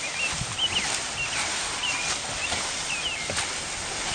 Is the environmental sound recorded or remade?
recorded